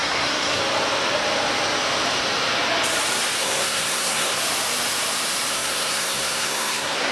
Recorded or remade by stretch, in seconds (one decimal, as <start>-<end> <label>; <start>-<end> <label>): 0.0-0.6 remade; 0.6-3.4 recorded; 3.4-4.4 remade; 4.4-5.5 recorded; 5.5-7.1 remade